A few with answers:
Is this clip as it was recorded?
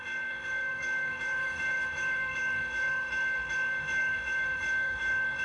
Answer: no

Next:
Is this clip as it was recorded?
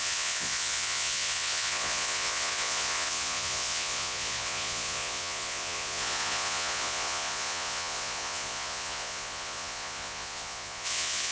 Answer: no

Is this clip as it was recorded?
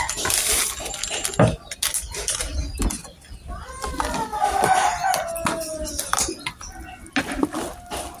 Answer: yes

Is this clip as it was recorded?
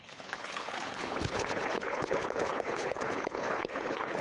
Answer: no